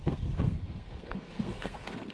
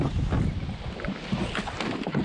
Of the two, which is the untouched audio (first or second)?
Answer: second